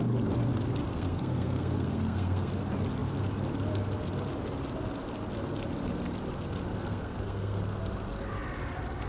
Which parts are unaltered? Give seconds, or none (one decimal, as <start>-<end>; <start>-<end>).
0.0-0.9; 2.5-6.8; 7.6-9.1